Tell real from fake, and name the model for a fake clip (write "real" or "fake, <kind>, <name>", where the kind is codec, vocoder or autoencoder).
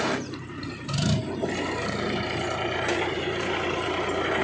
real